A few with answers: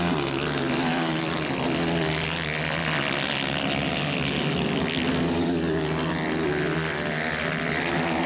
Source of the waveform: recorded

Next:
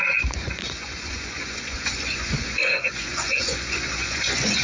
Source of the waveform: remade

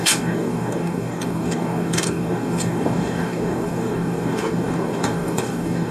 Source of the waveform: remade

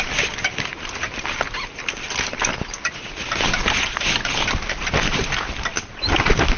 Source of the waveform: recorded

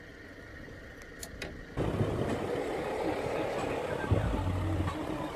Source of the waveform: recorded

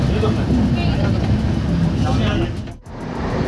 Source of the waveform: recorded